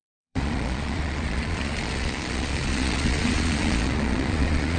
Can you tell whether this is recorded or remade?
remade